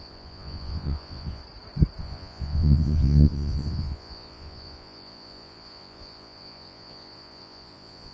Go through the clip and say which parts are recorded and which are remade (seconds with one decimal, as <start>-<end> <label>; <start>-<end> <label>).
0.0-1.4 remade; 1.4-2.0 recorded; 2.0-8.1 remade

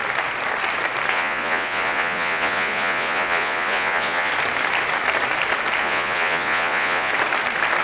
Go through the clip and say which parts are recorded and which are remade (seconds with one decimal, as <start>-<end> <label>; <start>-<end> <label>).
0.0-1.1 recorded; 1.1-4.3 remade; 4.3-5.8 recorded; 5.8-7.1 remade; 7.1-7.8 recorded

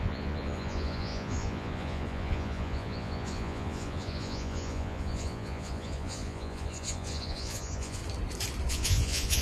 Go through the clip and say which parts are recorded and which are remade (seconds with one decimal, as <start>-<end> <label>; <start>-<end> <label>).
0.0-8.0 remade; 8.0-8.7 recorded; 8.7-9.4 remade

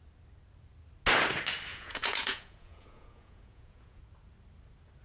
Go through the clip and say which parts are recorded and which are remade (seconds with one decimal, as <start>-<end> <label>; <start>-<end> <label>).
0.0-1.7 recorded; 1.7-4.0 remade; 4.0-5.0 recorded

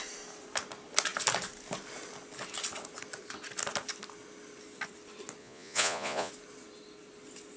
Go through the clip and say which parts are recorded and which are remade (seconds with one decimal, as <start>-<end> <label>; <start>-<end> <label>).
0.0-5.4 recorded; 5.4-6.3 remade; 6.3-7.6 recorded